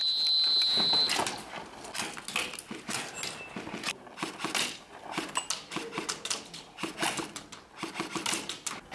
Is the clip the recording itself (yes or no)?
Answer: yes